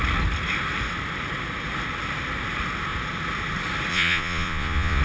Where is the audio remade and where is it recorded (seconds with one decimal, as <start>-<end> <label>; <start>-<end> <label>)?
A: 0.0-3.9 recorded; 3.9-5.0 remade